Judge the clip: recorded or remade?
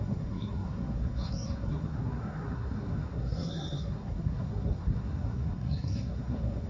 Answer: remade